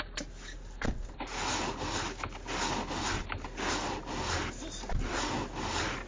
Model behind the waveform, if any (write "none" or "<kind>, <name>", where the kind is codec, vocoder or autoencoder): none